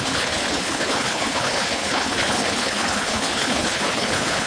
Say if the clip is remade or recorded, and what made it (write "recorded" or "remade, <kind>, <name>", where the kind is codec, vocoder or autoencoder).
remade, codec, HILCodec